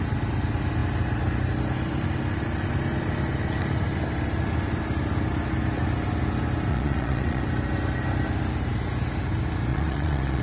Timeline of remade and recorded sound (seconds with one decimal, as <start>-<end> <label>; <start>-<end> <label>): 0.0-6.7 recorded; 6.7-7.4 remade; 7.4-9.7 recorded; 9.7-10.4 remade